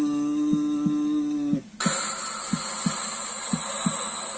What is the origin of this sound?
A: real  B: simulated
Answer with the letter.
A